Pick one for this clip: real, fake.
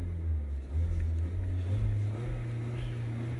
real